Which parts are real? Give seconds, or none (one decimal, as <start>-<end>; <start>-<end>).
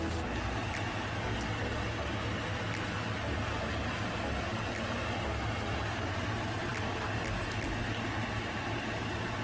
0.0-9.4